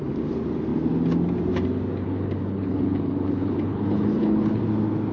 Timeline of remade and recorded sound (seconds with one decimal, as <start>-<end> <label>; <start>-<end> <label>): 0.0-2.0 recorded; 2.0-4.6 remade; 4.6-5.1 recorded